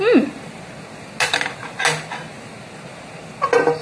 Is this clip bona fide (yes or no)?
yes